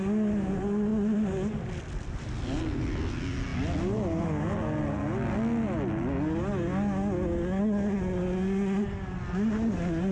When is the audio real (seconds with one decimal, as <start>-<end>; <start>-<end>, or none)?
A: 0.0-10.1